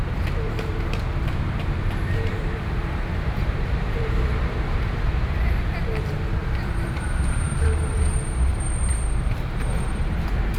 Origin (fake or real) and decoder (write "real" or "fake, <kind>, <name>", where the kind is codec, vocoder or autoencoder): fake, vocoder, BigVGAN v2